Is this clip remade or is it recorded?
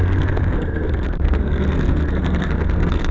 remade